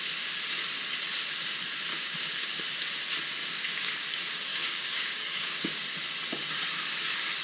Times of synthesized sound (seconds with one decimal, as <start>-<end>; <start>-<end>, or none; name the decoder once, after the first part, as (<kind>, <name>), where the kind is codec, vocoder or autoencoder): 1.9-2.6 (codec, DAC); 3.4-3.9; 4.5-5.8